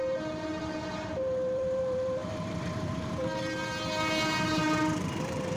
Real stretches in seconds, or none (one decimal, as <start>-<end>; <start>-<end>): none